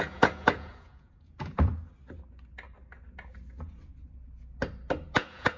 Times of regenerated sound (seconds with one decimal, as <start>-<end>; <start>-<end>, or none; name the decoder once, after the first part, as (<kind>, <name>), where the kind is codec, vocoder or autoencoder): 0.0-1.7 (vocoder, Vocos); 5.1-5.6